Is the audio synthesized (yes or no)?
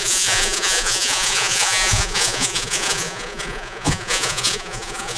yes